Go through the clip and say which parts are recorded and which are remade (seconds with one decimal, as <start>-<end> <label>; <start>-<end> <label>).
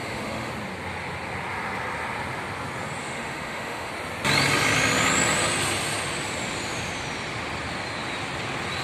0.0-0.5 remade; 0.5-3.0 recorded; 3.0-3.9 remade; 3.9-8.8 recorded